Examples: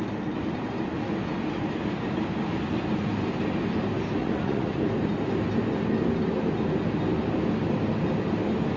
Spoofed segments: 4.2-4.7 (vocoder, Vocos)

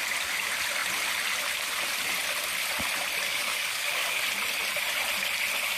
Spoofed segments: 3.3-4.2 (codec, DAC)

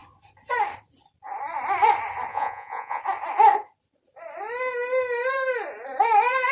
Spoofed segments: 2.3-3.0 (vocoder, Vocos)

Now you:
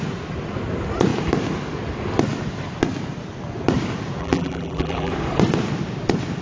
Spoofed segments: 4.2-5.1 (vocoder, BigVGAN v2)

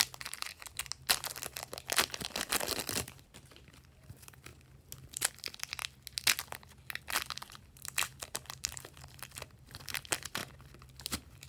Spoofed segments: 0.0-0.5 (vocoder, BigVGAN v2); 2.7-4.5; 5.3-5.8; 7.0-10.4; 11.1-11.5

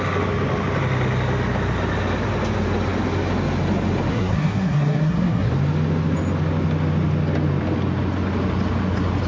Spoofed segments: 4.1-5.5 (codec, SNAC)

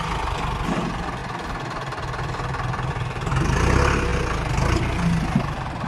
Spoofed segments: 1.2-2.9 (vocoder, BigVGAN v2); 4.1-5.9

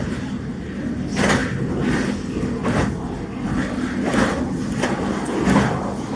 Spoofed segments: 0.0-0.8 (vocoder, BigVGAN v2)